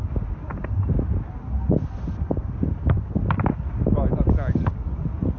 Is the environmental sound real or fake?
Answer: real